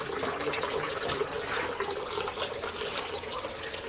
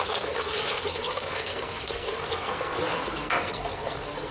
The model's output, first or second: second